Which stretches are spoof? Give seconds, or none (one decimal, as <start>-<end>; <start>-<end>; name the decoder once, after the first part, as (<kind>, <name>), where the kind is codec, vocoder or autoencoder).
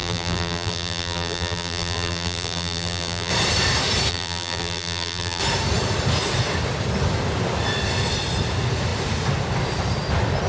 0.0-3.3 (vocoder, BigVGAN v2); 4.1-5.4